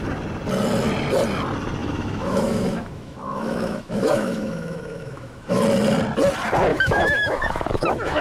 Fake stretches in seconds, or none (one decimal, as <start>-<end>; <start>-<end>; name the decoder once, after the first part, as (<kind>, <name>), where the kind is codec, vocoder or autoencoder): 1.8-5.6 (autoencoder, DAC-VAE); 6.7-8.2